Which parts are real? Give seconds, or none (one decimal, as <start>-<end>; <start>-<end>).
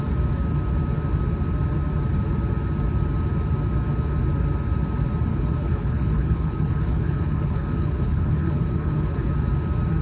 0.0-5.3; 9.3-10.0